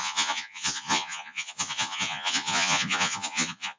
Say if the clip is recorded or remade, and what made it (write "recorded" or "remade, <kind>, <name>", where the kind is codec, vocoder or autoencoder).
remade, vocoder, Vocos